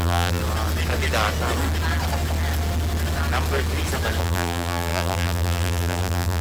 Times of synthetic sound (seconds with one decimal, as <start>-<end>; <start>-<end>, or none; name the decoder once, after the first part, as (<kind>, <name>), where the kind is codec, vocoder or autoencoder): 0.0-0.4 (vocoder, BigVGAN v2); 4.2-6.4